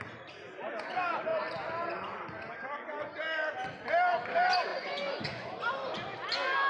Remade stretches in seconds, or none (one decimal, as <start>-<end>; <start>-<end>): 4.7-5.6